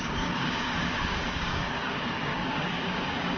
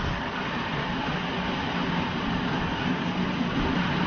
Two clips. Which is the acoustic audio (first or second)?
second